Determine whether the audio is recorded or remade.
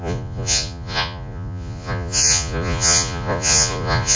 remade